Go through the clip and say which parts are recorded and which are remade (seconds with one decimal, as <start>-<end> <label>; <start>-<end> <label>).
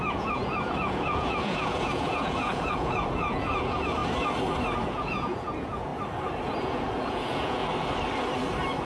0.0-4.0 remade; 4.0-4.9 recorded; 4.9-5.9 remade; 5.9-6.6 recorded; 6.6-7.6 remade; 7.6-8.8 recorded